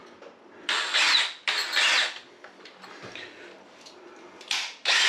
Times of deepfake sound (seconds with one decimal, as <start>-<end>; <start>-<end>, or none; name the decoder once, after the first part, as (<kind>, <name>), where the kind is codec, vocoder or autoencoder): none